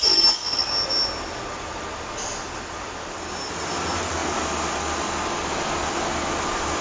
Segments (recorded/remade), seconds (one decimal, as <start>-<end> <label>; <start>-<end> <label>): 0.0-6.8 recorded